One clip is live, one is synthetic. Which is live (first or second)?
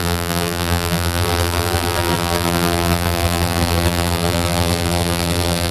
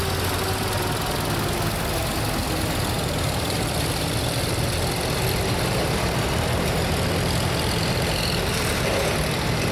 second